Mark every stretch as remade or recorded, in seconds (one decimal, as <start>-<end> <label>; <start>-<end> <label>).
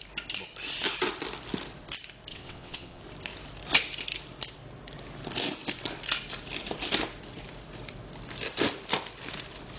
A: 0.0-2.3 recorded; 2.3-3.0 remade; 3.0-9.8 recorded